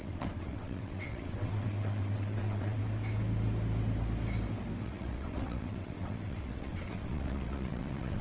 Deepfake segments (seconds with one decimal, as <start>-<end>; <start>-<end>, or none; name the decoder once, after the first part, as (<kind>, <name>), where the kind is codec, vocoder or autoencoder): 0.0-2.8 (vocoder, WaveNeXt); 4.8-8.2

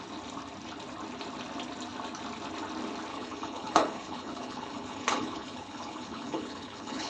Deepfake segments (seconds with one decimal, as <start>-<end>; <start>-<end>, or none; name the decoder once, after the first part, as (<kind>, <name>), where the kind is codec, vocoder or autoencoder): 3.1-7.1 (codec, HILCodec)

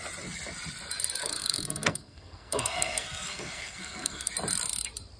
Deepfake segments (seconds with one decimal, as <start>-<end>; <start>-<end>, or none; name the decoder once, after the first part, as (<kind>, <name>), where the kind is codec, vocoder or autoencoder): 1.2-4.3 (codec, SNAC)

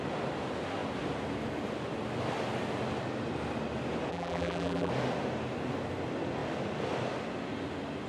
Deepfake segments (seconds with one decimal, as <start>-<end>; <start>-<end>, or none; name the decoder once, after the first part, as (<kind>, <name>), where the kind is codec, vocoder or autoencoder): 4.1-4.9 (vocoder, BigVGAN v2)

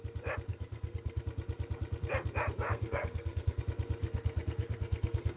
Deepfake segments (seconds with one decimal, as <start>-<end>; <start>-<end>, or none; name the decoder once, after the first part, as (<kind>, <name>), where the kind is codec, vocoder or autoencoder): 0.5-1.2 (codec, SNAC); 2.7-3.6; 4.0-5.4

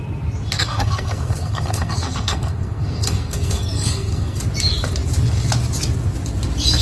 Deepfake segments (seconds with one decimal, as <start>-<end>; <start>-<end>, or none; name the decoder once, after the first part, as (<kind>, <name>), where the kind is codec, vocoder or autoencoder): 0.5-4.4 (codec, SNAC)

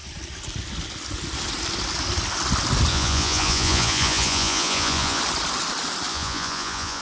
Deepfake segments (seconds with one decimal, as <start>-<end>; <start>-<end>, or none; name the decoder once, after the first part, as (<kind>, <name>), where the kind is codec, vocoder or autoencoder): 2.9-5.2 (vocoder, Vocos); 6.1-7.0